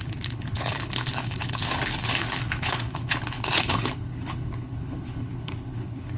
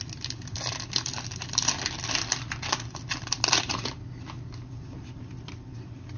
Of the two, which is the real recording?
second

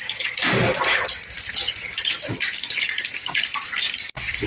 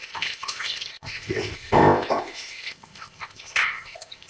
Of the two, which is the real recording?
first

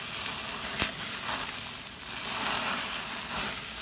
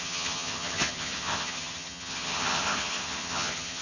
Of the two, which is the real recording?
first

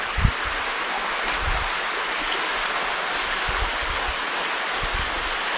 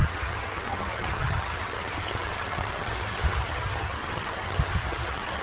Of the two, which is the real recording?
first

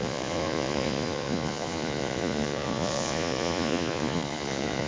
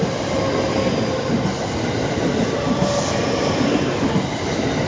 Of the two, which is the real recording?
second